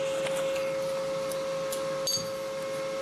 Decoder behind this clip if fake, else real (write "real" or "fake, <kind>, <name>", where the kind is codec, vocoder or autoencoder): real